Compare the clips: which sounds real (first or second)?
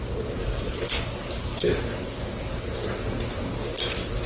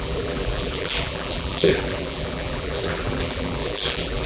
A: first